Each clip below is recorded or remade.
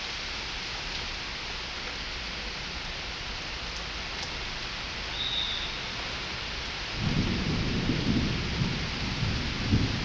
recorded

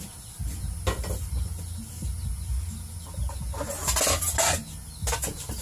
recorded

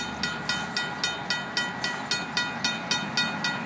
recorded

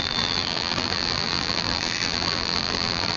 remade